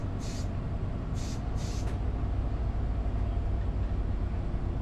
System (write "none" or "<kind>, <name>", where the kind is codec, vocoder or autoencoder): none